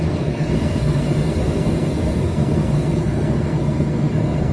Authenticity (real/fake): fake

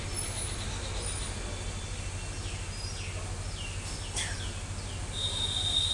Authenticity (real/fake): real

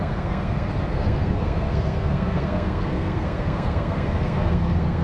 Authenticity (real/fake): fake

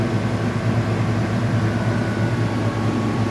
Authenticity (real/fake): real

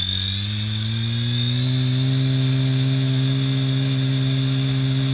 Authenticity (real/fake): real